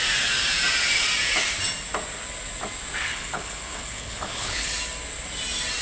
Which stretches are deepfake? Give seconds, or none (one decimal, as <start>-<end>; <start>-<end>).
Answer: 3.1-4.7